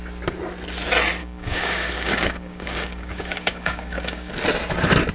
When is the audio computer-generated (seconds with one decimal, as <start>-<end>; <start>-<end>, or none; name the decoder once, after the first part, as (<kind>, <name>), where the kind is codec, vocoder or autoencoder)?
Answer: 1.2-4.3 (codec, DAC)

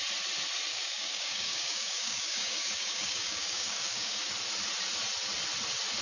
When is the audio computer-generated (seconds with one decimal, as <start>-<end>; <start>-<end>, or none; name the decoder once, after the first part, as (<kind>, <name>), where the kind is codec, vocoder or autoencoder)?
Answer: 0.7-4.3 (codec, DAC)